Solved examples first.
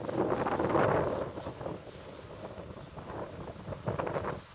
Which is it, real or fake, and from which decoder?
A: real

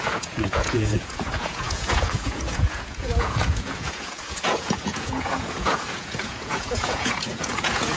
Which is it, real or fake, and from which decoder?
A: fake, vocoder, Vocos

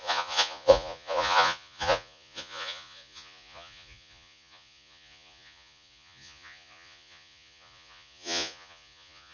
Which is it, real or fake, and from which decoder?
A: fake, vocoder, Vocos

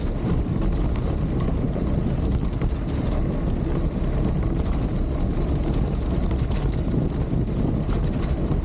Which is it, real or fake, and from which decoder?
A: real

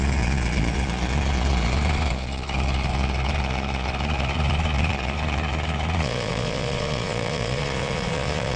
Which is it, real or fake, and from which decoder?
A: fake, vocoder, Vocos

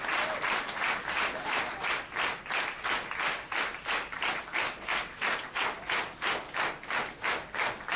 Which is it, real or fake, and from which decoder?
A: real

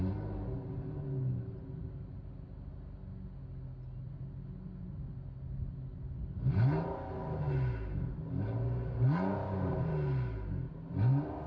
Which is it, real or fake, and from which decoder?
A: real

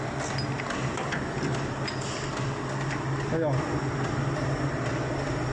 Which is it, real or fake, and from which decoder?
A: real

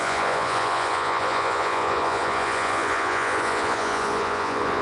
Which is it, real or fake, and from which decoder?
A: fake, vocoder, Vocos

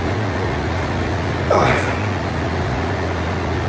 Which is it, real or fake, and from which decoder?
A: fake, vocoder, Vocos